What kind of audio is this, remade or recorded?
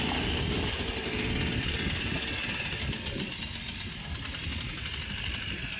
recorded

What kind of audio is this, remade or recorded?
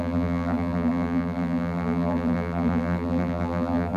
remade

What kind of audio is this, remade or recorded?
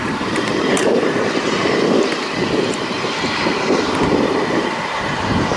remade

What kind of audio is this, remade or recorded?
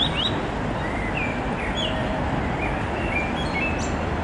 recorded